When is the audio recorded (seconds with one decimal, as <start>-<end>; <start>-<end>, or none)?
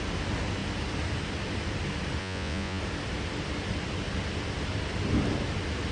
0.0-2.2; 2.8-5.9